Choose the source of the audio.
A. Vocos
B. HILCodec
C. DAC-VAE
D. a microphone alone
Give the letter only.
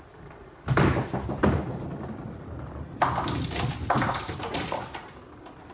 D